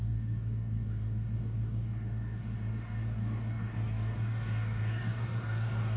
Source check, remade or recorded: remade